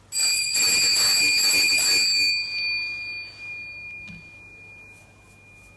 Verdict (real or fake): real